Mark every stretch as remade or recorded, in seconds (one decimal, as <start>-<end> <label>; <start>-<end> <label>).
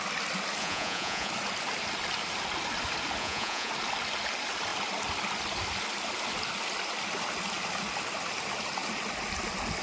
0.0-0.6 recorded; 0.6-1.3 remade; 1.3-3.2 recorded; 3.2-3.7 remade; 3.7-9.8 recorded